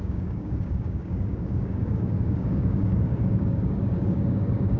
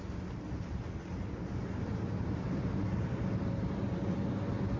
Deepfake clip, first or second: first